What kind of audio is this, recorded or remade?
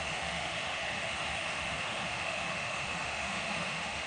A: remade